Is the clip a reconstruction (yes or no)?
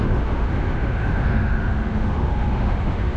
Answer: yes